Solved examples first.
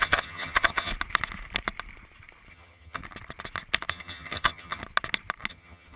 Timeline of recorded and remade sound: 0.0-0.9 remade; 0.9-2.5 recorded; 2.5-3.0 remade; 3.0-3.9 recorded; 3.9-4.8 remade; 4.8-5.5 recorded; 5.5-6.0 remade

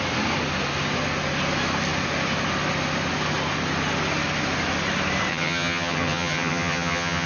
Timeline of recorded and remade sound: 0.0-5.3 recorded; 5.3-7.3 remade

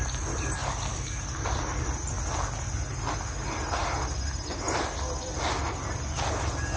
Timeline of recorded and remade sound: 0.0-6.8 recorded